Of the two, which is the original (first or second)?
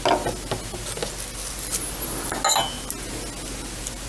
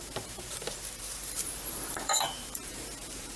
first